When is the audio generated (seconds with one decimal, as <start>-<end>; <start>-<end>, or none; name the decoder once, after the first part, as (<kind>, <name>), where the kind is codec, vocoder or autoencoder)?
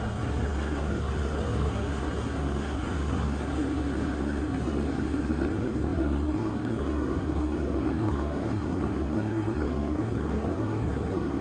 0.0-11.4 (codec, SNAC)